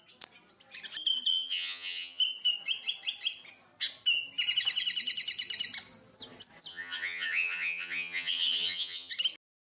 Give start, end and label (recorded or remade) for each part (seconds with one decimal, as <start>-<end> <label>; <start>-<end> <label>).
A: 0.0-1.3 recorded; 1.3-2.2 remade; 2.2-6.7 recorded; 6.7-9.1 remade; 9.1-9.8 recorded